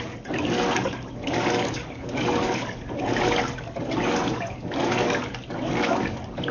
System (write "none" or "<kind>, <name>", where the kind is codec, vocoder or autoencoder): codec, DAC